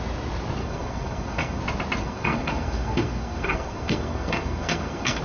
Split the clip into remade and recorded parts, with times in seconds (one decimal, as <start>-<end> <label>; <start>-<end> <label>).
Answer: 0.0-0.6 recorded; 0.6-1.6 remade; 1.6-2.0 recorded; 2.0-5.2 remade